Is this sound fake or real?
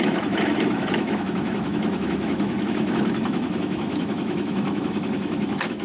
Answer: fake